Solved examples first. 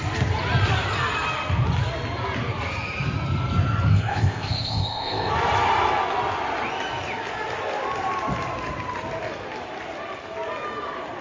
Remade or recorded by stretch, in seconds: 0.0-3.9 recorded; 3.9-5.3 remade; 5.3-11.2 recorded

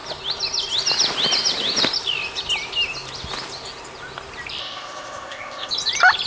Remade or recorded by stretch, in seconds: 0.0-4.6 recorded; 4.6-5.7 remade; 5.7-6.3 recorded

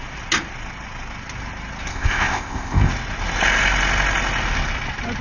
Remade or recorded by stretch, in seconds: 0.0-1.9 recorded; 1.9-2.9 remade; 2.9-5.2 recorded

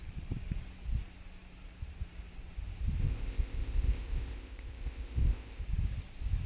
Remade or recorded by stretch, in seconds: 0.0-3.0 recorded; 3.0-5.6 remade; 5.6-6.5 recorded

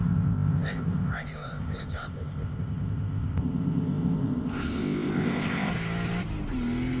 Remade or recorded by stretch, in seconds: 0.0-5.7 remade; 5.7-7.0 recorded

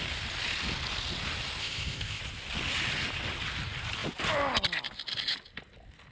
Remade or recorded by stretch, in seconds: 0.0-1.6 recorded; 1.6-2.2 remade; 2.2-6.1 recorded

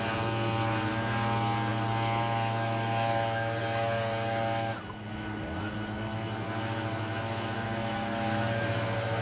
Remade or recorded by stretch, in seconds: 0.0-9.2 recorded